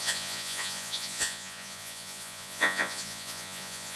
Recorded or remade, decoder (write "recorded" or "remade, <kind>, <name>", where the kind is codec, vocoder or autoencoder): remade, vocoder, Vocos